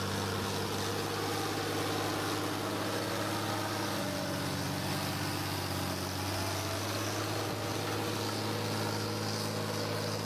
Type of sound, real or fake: real